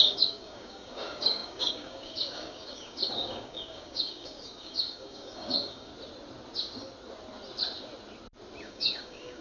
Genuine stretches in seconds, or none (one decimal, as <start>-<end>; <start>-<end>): 5.9-8.6